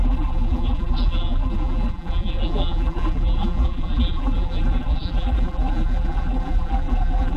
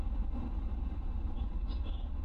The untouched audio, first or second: second